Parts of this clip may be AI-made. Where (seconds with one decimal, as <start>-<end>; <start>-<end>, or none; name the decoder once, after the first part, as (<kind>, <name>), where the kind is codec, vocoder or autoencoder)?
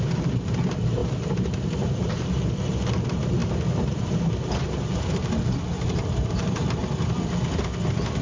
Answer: 0.0-6.8 (vocoder, BigVGAN v2)